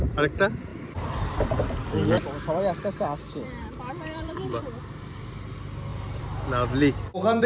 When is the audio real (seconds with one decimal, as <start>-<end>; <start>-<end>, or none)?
0.0-0.7; 5.2-5.9